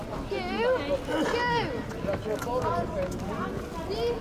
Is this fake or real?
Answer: real